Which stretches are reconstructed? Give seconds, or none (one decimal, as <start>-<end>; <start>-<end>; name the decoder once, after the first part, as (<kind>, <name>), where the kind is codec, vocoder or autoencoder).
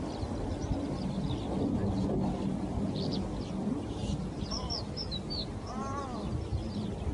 none